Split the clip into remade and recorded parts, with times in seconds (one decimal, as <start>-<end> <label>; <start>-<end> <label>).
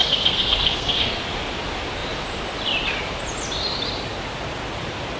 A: 0.0-1.2 remade; 1.2-5.2 recorded